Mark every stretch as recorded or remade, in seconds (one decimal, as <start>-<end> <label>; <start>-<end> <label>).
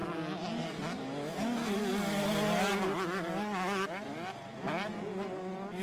0.0-5.8 recorded